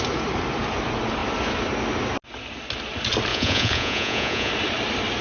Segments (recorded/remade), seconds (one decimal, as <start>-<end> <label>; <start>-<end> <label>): 0.0-3.3 recorded; 3.3-4.5 remade; 4.5-5.2 recorded